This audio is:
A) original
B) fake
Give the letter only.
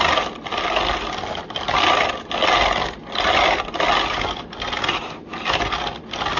A